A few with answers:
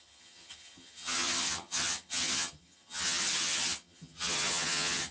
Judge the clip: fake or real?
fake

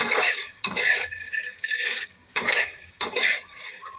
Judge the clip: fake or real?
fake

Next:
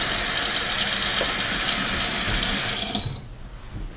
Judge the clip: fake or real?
real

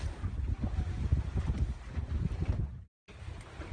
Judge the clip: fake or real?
real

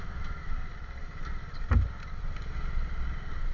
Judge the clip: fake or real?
real